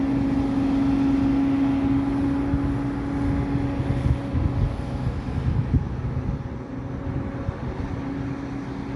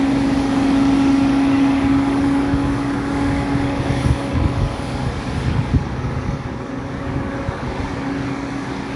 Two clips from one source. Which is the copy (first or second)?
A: second